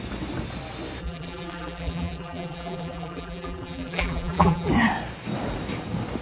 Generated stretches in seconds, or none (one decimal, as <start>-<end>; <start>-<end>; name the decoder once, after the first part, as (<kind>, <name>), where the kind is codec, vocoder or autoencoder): 1.0-4.7 (vocoder, BigVGAN v2)